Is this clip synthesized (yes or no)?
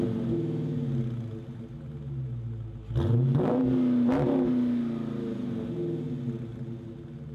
no